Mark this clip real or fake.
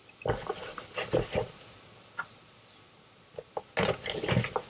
real